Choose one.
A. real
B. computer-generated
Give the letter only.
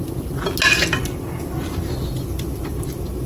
A